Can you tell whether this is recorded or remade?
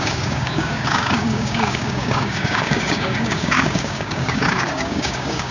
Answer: remade